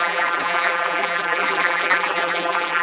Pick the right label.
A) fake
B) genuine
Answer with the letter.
A